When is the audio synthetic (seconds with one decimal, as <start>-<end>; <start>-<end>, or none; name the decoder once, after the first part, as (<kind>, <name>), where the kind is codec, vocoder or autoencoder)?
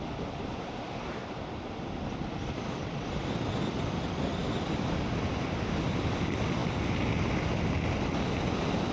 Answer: none